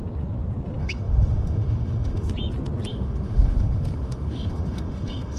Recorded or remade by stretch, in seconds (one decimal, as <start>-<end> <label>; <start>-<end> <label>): 0.0-0.8 recorded; 0.8-2.3 remade; 2.3-2.9 recorded; 2.9-5.4 remade